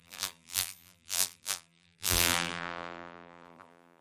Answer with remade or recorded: remade